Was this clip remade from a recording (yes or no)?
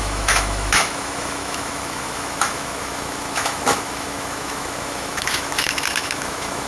yes